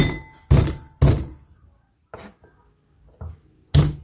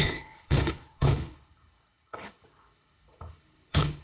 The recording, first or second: first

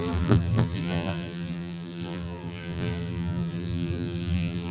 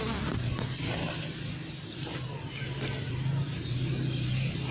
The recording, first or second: second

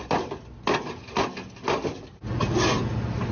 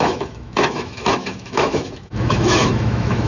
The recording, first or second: first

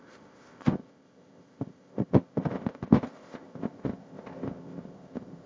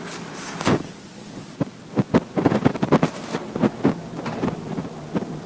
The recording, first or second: second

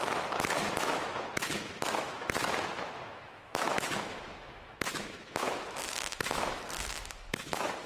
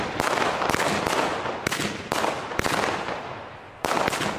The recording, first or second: second